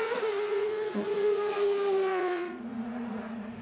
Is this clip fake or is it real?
fake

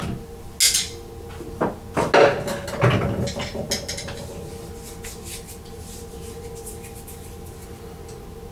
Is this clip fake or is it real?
real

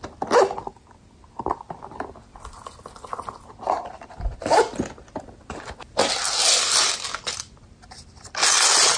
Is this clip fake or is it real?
real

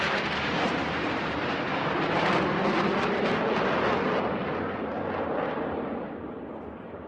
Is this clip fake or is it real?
real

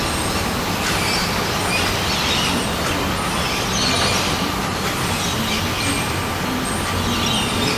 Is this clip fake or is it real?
real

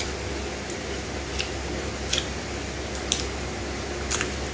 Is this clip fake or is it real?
real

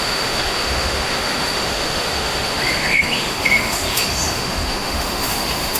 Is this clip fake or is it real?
fake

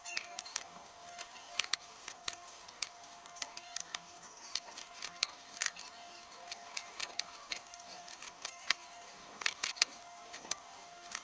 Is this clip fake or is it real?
fake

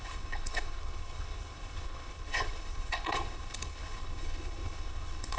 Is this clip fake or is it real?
fake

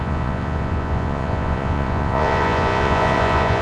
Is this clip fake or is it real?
fake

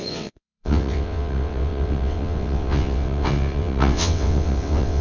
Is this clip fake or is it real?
fake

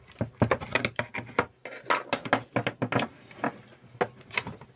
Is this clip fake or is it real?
real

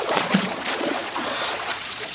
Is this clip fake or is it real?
fake